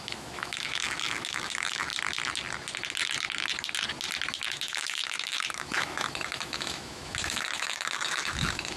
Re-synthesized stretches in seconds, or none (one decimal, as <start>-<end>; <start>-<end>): 0.0-1.9; 4.5-8.8